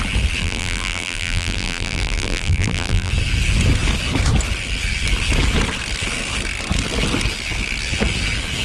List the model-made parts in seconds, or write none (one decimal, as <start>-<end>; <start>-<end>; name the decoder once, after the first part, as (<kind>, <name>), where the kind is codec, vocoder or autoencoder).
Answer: 0.4-3.1 (vocoder, BigVGAN v2)